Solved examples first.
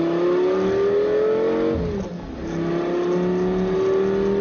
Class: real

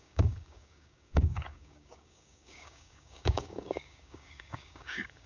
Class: fake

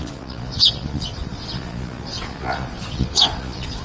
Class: fake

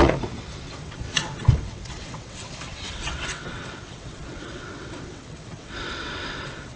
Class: fake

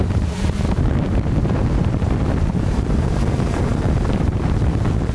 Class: fake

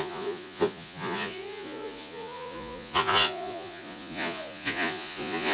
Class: fake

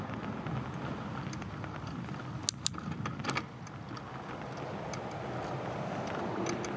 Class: real